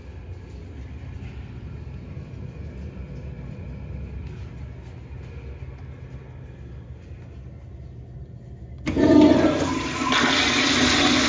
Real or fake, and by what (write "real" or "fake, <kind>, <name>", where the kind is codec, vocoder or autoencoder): real